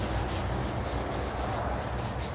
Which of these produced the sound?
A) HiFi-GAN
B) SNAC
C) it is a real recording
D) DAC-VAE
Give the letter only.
C